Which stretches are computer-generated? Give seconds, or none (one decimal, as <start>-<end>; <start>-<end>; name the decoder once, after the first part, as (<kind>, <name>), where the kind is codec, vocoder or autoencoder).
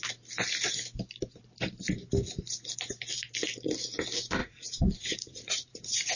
4.4-6.2 (vocoder, Vocos)